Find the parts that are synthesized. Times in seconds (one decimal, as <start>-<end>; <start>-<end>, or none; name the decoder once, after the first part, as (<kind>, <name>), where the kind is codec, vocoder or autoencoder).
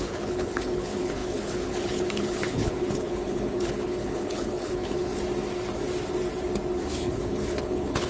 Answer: 0.0-5.1 (codec, HILCodec); 6.8-8.1